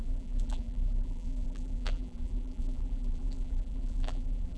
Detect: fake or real fake